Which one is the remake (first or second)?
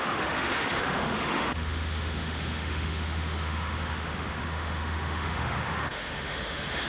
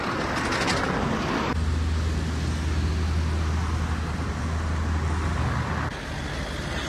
first